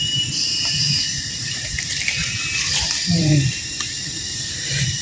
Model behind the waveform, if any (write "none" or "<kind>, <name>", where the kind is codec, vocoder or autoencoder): vocoder, BigVGAN v2